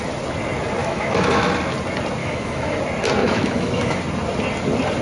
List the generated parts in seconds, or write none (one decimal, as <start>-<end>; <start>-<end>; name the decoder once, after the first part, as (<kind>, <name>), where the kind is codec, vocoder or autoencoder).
0.8-1.5 (autoencoder, DAC-VAE); 2.2-2.8; 3.2-4.0